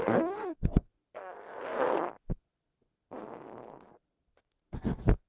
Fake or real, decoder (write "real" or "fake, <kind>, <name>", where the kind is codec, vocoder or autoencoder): fake, codec, SNAC